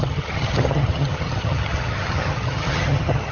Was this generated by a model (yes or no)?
yes